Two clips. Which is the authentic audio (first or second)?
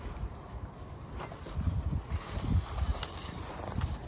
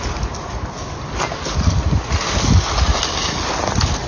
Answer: second